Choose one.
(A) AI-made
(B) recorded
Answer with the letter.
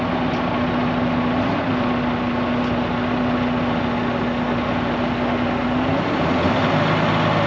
B